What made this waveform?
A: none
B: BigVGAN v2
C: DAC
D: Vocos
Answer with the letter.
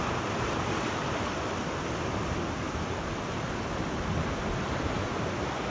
A